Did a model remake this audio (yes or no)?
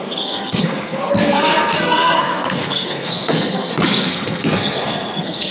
yes